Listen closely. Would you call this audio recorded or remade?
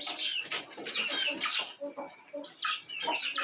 recorded